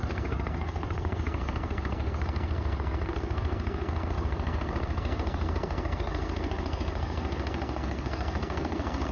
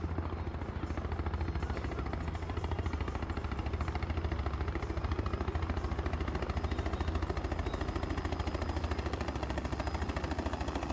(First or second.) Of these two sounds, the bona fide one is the second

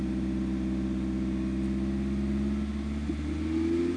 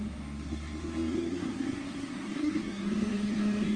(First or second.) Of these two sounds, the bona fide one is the first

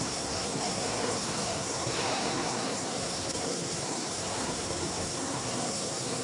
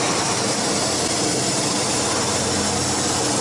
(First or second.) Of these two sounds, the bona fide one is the second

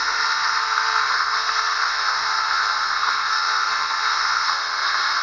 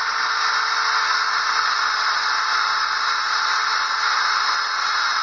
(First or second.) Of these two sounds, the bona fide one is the second